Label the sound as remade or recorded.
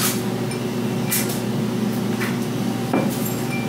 recorded